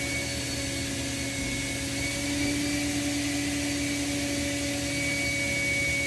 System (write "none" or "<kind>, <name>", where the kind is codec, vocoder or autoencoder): none